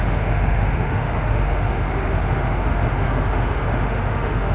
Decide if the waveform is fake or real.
fake